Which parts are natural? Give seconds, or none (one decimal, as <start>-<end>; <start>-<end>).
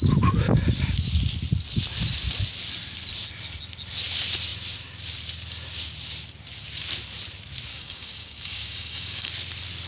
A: 0.0-7.7; 9.3-9.9